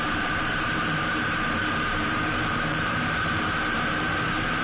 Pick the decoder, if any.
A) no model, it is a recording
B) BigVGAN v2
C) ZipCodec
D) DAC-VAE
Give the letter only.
B